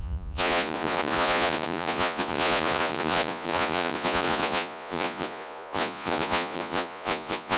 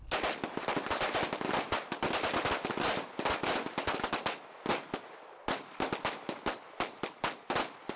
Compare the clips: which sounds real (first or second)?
second